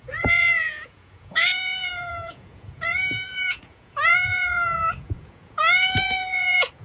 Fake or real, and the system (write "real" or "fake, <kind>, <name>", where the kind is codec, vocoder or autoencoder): fake, vocoder, Vocos